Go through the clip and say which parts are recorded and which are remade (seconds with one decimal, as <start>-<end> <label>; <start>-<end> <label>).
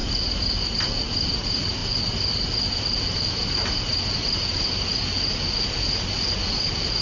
0.0-7.0 recorded